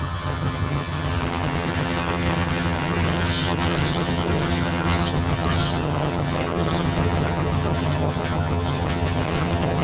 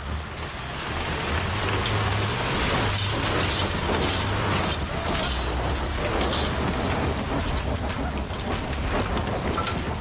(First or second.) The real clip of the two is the second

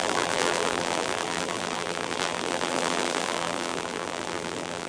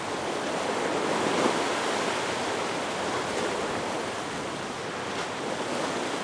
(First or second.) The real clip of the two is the second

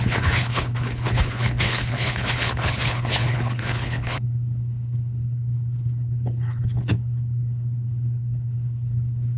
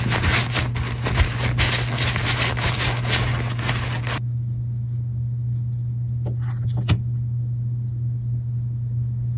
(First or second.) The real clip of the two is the second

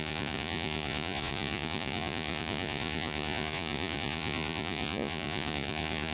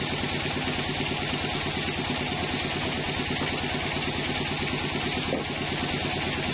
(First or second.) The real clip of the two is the second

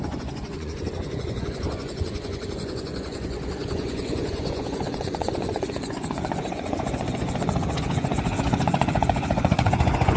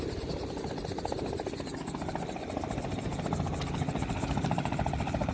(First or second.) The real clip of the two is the second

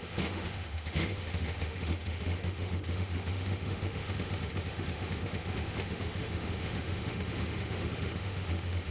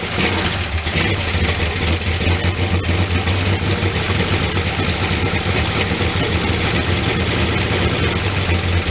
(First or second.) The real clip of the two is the second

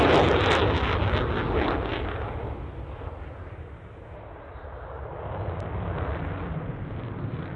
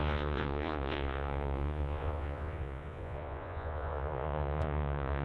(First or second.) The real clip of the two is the first